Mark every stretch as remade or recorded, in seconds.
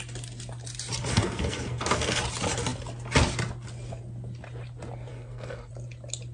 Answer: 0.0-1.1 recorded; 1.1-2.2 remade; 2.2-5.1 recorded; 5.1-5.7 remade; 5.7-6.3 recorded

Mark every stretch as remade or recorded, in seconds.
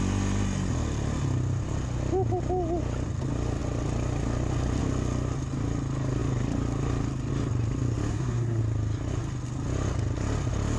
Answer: 0.0-8.1 recorded; 8.1-8.6 remade; 8.6-10.8 recorded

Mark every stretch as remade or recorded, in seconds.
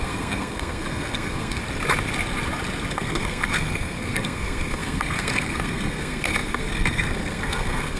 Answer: 0.0-1.6 remade; 1.6-2.9 recorded; 2.9-8.0 remade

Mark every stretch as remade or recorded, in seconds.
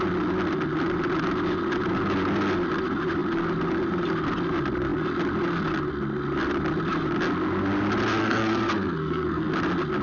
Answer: 0.0-8.2 recorded; 8.2-9.5 remade; 9.5-10.0 recorded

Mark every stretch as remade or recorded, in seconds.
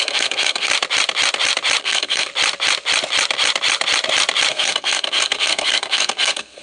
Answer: 0.0-0.7 remade; 0.7-1.8 recorded; 1.8-2.3 remade; 2.3-4.5 recorded; 4.5-6.6 remade